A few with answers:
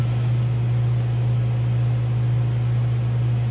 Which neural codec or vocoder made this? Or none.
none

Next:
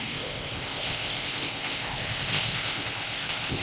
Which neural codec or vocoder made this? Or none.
codec, ZipCodec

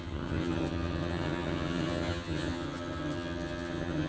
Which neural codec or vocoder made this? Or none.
vocoder, HiFi-GAN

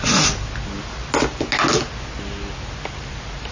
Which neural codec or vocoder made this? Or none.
none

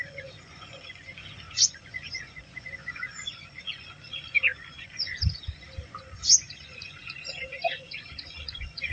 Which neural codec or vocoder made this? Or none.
vocoder, Vocos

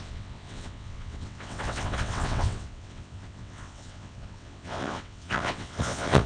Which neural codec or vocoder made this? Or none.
vocoder, WaveNeXt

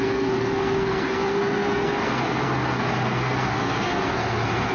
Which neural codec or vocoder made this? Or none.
codec, SNAC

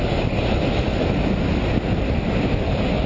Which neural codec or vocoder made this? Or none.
none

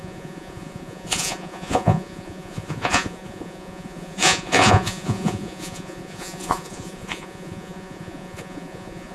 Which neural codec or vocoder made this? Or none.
vocoder, Vocos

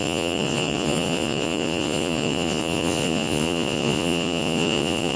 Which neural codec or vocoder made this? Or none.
vocoder, Vocos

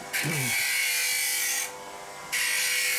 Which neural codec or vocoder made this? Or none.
none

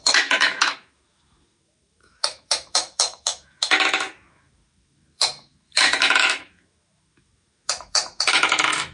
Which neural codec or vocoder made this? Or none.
autoencoder, DAC-VAE